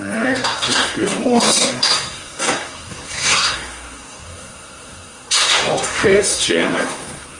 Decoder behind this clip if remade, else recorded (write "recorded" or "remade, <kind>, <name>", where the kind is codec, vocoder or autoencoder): remade, codec, SNAC